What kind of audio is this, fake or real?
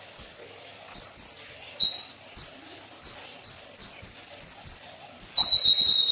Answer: real